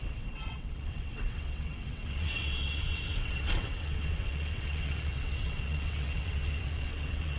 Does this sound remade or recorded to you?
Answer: remade